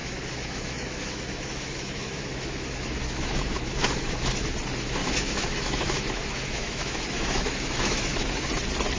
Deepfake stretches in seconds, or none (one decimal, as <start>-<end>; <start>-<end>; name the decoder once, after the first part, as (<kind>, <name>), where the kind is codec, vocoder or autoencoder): 0.0-4.5 (autoencoder, DAC-VAE); 5.0-8.2